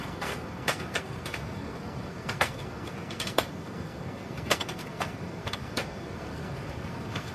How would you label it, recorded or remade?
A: remade